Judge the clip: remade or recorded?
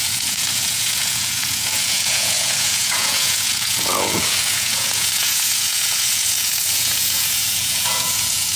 remade